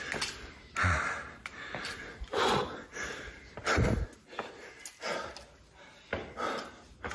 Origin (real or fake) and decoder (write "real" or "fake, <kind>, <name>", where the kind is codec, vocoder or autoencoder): real